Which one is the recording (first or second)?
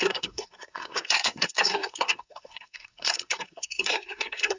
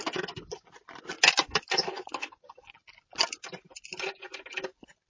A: second